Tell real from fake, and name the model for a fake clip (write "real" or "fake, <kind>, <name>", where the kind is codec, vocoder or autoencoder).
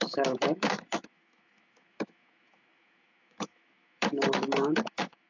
fake, autoencoder, DAC-VAE